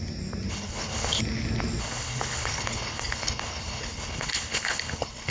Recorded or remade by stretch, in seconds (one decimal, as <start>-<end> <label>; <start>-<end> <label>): 0.0-0.5 recorded; 0.5-1.2 remade; 1.2-1.8 recorded; 1.8-5.3 remade